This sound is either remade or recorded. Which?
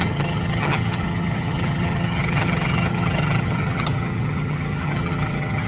remade